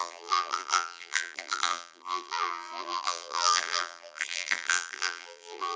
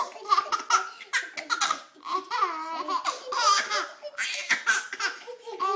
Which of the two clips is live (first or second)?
second